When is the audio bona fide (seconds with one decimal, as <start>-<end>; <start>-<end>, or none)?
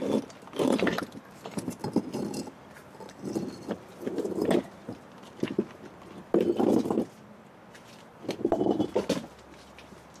0.0-10.2